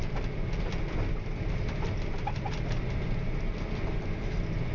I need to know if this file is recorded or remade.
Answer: recorded